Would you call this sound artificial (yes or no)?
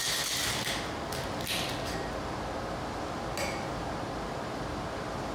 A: no